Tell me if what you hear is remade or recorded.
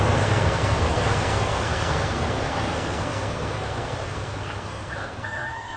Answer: remade